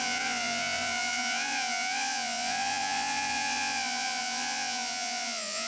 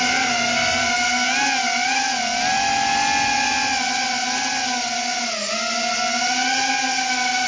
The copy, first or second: first